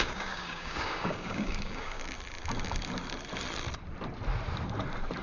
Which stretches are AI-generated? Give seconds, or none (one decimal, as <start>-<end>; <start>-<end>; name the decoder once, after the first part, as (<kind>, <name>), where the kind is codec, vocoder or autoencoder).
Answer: 0.0-2.0 (codec, DAC)